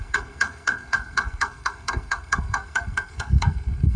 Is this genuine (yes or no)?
no